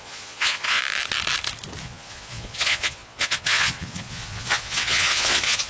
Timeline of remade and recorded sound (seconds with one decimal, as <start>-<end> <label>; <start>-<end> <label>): 0.0-0.8 remade; 0.8-1.8 recorded; 1.8-5.7 remade